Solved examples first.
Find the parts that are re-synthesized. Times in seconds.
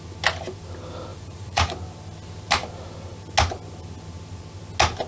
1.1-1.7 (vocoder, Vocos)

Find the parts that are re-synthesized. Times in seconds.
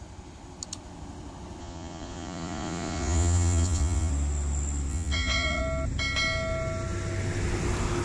1.6-4.1 (vocoder, Vocos); 4.9-5.6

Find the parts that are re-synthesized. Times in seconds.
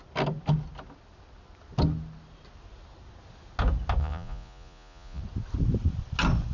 4.0-5.2 (vocoder, Vocos)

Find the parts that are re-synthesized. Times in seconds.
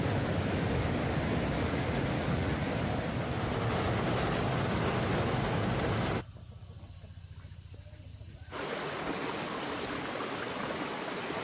1.6-2.7 (vocoder, Vocos); 8.1-9.0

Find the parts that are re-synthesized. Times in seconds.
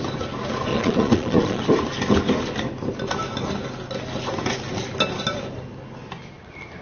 0.7-1.6 (vocoder, Vocos)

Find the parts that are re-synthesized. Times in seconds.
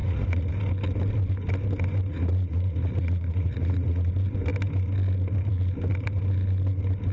0.0-0.5 (vocoder, Vocos); 2.1-4.1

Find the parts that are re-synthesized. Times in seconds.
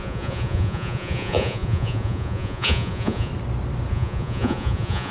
0.0-3.3 (vocoder, Vocos); 3.9-5.1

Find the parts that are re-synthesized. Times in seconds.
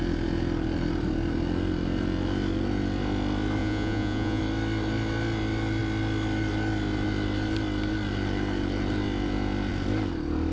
3.6-4.4 (vocoder, Vocos)